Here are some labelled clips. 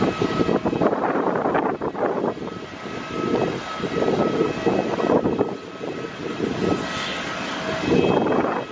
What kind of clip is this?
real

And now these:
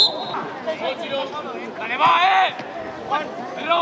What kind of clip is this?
real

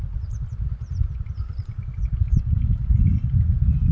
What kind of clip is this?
real